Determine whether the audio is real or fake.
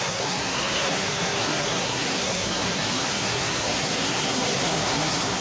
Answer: fake